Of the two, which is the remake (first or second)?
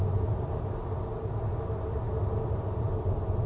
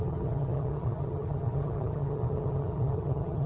second